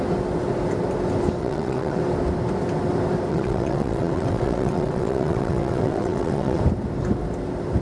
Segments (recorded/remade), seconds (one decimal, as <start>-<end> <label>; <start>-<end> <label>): 0.0-1.4 recorded; 1.4-2.0 remade; 2.0-3.3 recorded; 3.3-6.6 remade; 6.6-7.8 recorded